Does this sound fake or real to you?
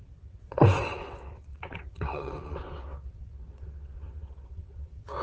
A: fake